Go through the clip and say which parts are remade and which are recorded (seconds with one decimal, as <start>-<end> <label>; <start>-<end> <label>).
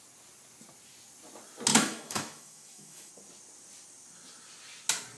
0.0-1.7 recorded; 1.7-3.1 remade; 3.1-5.2 recorded